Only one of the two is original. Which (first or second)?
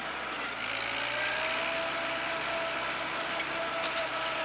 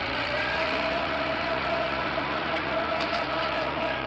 first